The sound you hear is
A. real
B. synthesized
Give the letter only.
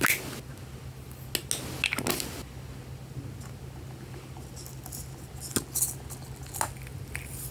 A